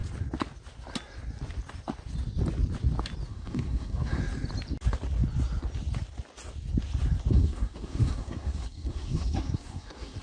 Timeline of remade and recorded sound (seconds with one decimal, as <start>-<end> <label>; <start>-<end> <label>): 0.0-3.3 recorded; 3.3-4.2 remade; 4.2-7.3 recorded; 7.3-10.2 remade